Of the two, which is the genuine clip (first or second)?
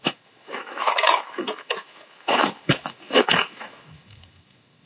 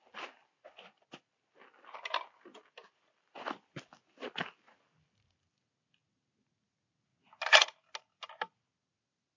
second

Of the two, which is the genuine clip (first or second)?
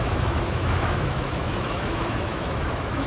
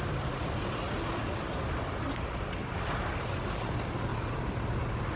second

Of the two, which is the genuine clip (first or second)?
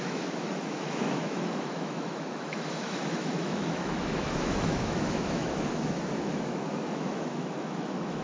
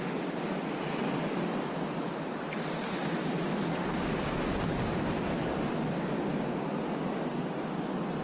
second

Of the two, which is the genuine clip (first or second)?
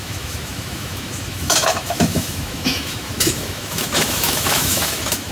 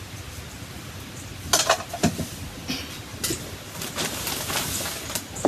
second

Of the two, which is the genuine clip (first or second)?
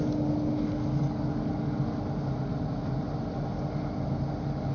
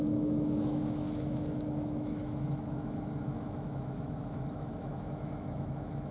first